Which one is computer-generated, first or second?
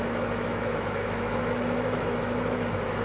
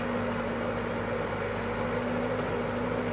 first